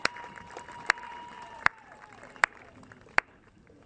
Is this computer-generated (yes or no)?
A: yes